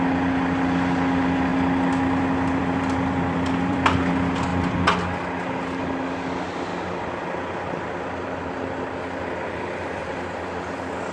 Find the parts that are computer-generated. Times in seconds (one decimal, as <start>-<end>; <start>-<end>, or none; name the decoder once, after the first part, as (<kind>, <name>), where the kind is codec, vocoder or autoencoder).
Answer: 0.0-1.5 (vocoder, BigVGAN v2); 2.6-4.5; 5.4-6.7; 10.0-11.1